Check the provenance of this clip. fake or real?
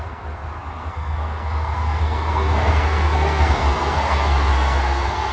fake